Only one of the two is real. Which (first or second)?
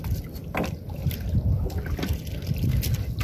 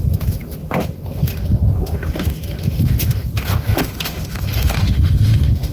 first